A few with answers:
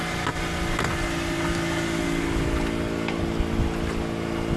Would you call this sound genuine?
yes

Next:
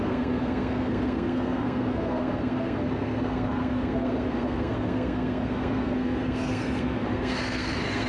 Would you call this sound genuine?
no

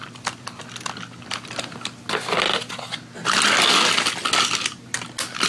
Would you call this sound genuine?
yes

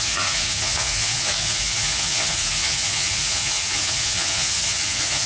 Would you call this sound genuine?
no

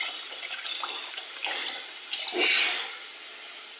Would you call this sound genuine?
yes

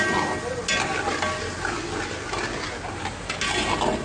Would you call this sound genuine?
yes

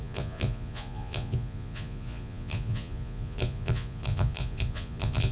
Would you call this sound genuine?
no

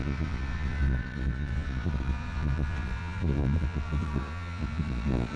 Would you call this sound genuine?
no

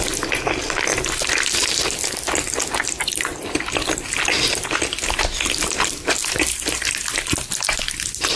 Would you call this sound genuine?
yes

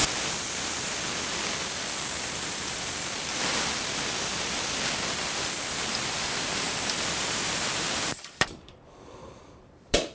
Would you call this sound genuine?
no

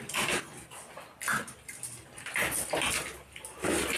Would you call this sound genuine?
yes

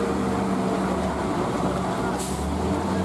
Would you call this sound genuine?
yes